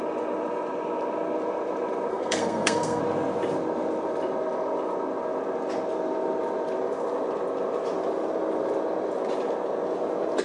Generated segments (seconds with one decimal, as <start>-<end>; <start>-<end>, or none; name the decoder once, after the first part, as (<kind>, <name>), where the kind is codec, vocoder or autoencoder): 2.1-3.0 (codec, SNAC)